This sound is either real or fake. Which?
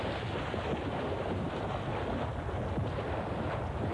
real